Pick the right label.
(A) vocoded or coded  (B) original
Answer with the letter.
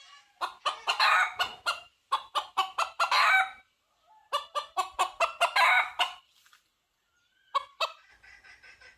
B